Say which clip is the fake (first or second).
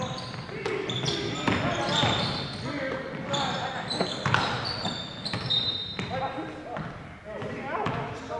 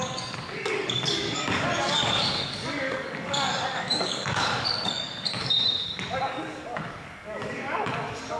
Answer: second